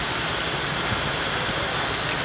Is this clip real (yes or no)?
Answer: yes